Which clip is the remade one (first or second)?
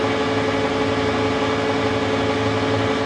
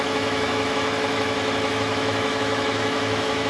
second